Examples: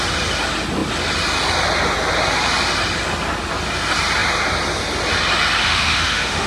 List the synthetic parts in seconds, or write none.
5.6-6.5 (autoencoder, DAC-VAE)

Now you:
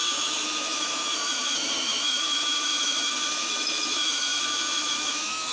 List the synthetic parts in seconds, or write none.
0.0-5.5 (autoencoder, DAC-VAE)

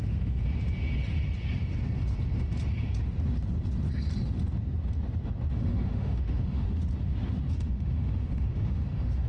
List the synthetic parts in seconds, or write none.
0.0-0.4 (autoencoder, DAC-VAE); 5.5-6.8; 7.5-9.3

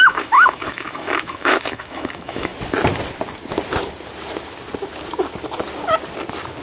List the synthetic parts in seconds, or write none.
0.0-2.5 (autoencoder, DAC-VAE)